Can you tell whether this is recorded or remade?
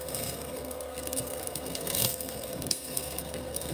remade